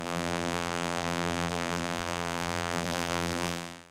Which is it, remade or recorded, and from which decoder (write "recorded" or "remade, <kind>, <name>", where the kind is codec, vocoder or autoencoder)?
remade, vocoder, BigVGAN v2